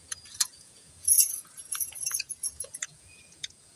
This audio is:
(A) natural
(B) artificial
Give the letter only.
B